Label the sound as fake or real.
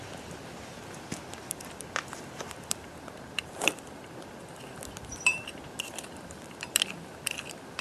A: fake